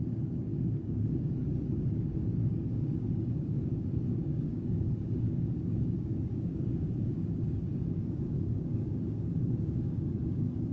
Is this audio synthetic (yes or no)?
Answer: yes